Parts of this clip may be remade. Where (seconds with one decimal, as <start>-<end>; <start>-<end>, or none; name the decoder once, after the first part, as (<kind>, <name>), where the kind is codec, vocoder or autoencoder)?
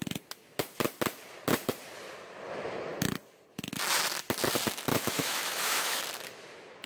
4.9-6.0 (autoencoder, DAC-VAE)